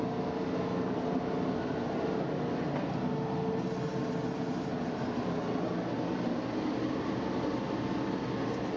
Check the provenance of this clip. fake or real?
real